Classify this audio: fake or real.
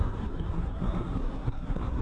fake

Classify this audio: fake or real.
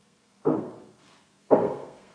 fake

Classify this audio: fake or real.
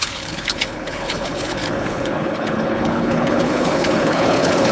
fake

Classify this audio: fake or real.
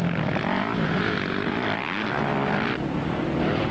real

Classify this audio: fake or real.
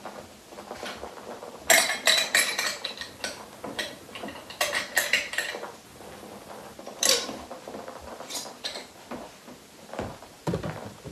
real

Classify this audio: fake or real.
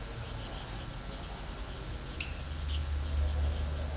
real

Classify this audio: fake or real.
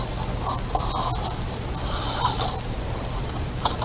real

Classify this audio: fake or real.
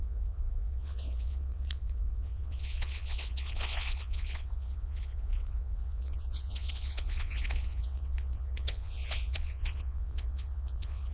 fake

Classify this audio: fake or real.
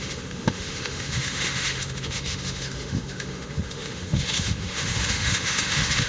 fake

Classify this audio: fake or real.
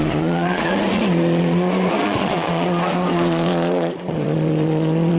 fake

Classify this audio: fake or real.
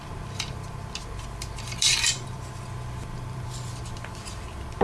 fake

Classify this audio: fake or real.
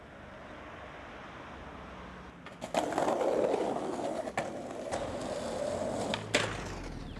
real